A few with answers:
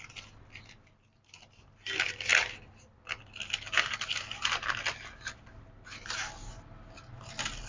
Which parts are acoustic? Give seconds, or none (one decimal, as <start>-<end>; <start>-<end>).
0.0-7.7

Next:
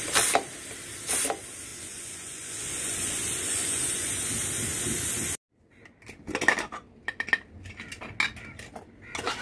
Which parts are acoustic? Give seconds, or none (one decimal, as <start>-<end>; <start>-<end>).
0.0-1.7; 4.1-9.4

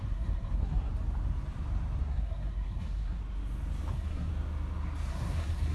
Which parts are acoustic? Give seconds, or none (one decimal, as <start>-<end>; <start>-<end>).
0.9-2.0; 3.2-3.9; 4.3-5.1

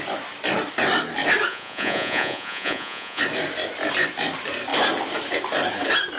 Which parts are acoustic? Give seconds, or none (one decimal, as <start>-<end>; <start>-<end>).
0.0-1.5; 3.2-6.2

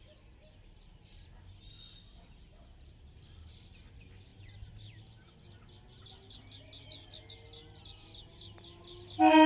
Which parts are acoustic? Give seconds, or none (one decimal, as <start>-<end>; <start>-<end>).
0.0-9.5